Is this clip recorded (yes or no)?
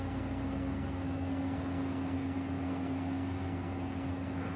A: no